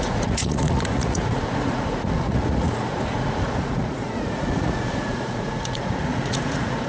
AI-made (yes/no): yes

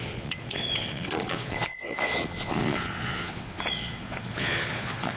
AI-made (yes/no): yes